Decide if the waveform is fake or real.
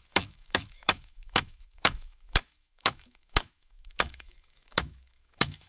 fake